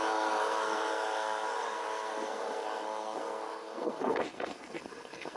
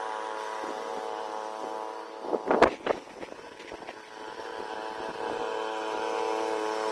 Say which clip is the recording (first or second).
second